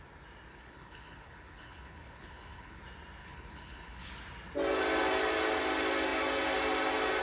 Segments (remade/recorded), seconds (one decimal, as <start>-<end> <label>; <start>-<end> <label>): 0.0-0.5 recorded; 0.5-2.8 remade; 2.8-3.2 recorded; 3.2-4.1 remade; 4.1-7.2 recorded

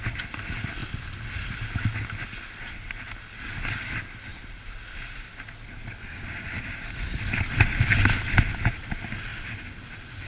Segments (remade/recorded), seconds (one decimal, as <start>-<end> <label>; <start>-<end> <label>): 0.0-10.3 recorded

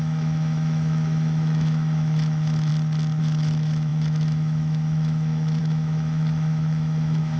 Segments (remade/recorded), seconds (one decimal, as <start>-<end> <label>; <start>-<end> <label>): 0.0-2.7 remade; 2.7-3.2 recorded; 3.2-7.4 remade

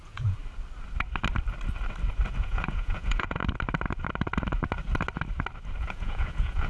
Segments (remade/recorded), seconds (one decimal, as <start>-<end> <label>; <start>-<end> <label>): 0.0-0.4 remade; 0.4-2.4 recorded; 2.4-3.4 remade; 3.4-5.8 recorded; 5.8-6.7 remade

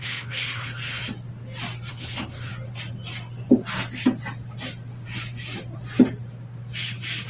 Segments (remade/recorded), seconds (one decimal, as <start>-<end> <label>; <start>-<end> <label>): 0.0-1.0 remade; 1.0-1.9 recorded; 1.9-2.5 remade; 2.5-7.3 recorded

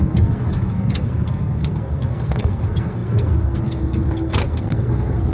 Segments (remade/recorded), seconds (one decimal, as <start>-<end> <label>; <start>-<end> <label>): 0.0-5.3 remade